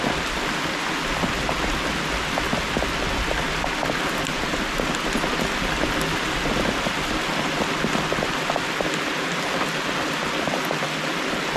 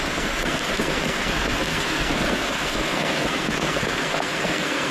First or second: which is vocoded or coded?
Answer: second